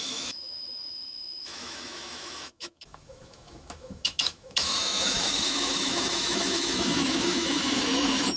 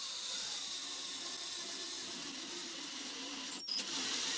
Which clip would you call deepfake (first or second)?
first